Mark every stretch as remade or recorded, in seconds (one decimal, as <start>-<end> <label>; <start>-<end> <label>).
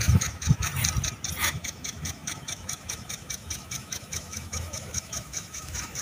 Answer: 0.0-0.7 remade; 0.7-1.4 recorded; 1.4-6.0 remade